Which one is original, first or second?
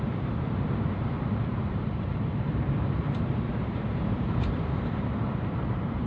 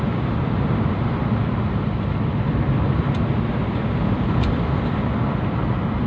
second